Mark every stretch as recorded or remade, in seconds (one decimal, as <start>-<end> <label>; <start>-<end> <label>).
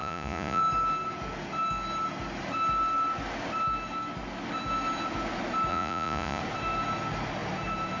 0.0-0.6 remade; 0.6-5.7 recorded; 5.7-6.4 remade; 6.4-8.0 recorded